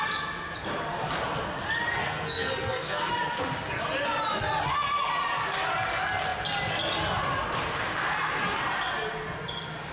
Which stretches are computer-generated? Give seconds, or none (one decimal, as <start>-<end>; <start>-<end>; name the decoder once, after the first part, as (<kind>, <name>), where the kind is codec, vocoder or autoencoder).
1.9-3.1 (codec, SNAC)